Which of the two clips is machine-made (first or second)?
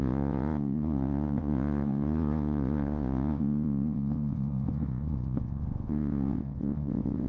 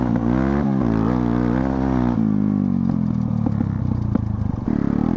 first